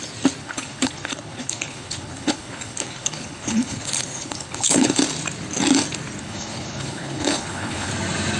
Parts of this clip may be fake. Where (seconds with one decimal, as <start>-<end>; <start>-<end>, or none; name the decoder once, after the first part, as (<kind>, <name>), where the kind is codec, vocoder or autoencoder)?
0.4-5.0 (codec, HILCodec); 6.2-7.9